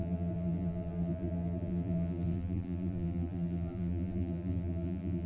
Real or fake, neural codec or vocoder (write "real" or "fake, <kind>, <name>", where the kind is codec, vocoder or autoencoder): fake, vocoder, BigVGAN v2